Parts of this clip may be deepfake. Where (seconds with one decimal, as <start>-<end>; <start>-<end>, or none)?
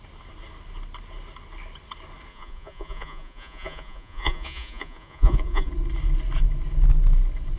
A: 2.3-5.7